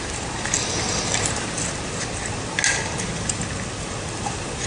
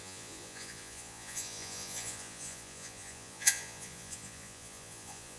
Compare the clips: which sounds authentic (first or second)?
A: first